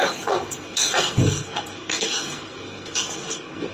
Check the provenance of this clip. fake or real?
fake